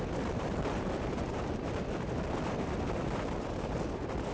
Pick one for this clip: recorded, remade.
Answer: remade